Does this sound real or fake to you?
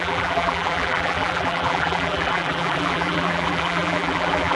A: fake